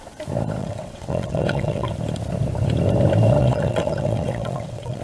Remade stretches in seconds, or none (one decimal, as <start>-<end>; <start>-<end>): 0.6-1.9; 3.4-5.0